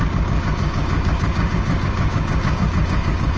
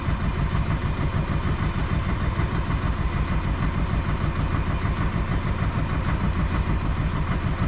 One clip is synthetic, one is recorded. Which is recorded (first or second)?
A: second